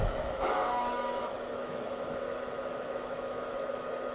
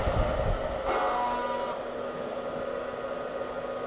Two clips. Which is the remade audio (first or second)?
first